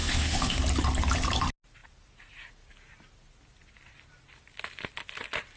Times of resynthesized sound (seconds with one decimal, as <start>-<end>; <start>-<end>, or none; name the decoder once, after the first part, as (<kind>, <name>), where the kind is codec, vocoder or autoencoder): 0.0-0.6 (autoencoder, DAC-VAE)